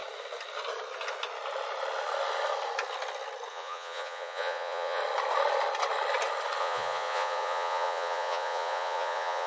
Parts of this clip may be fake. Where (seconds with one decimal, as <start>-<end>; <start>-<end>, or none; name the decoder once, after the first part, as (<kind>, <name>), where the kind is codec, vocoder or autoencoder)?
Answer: 3.5-5.0 (vocoder, Vocos); 6.6-9.5